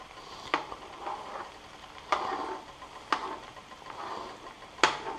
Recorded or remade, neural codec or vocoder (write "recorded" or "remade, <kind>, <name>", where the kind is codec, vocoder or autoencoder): recorded